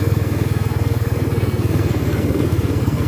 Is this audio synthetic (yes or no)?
yes